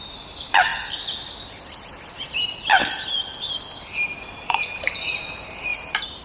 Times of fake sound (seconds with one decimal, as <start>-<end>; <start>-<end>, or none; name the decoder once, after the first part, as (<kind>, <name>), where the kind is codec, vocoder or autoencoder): 0.0-0.7 (vocoder, BigVGAN v2); 4.4-6.2